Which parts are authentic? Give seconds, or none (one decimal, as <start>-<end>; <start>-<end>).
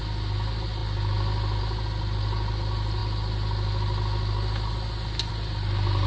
0.0-6.1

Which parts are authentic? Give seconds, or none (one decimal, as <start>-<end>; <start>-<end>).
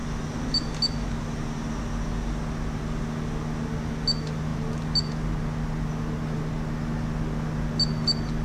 0.0-8.4